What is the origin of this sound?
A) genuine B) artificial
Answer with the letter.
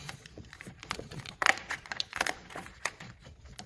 B